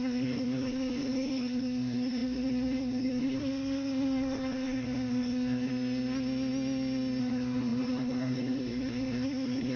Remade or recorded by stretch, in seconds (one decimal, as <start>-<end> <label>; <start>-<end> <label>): 0.0-5.7 remade; 5.7-7.2 recorded; 7.2-9.8 remade